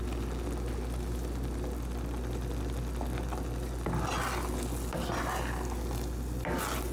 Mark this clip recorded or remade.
recorded